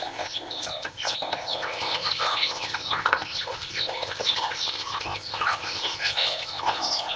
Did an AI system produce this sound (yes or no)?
yes